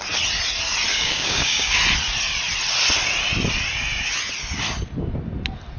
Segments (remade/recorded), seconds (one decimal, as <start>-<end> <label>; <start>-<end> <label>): 0.0-0.9 recorded; 0.9-1.8 remade; 1.8-5.8 recorded